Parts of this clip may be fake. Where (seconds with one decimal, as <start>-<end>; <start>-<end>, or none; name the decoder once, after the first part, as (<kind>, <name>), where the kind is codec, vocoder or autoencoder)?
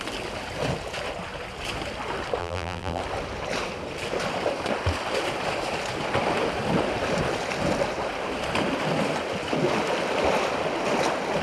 2.4-3.0 (vocoder, BigVGAN v2)